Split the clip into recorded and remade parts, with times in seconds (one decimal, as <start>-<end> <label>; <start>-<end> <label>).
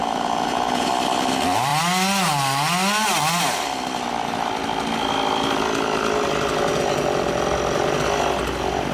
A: 0.0-0.9 remade; 0.9-8.9 recorded